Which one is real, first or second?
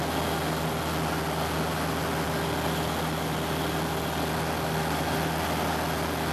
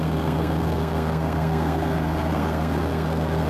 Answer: first